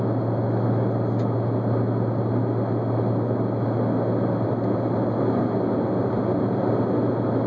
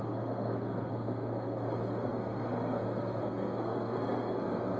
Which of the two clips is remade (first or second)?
second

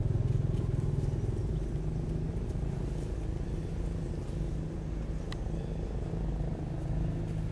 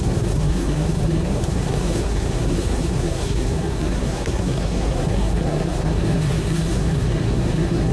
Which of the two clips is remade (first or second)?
second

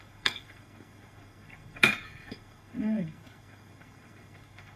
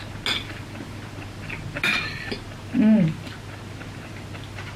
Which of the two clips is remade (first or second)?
first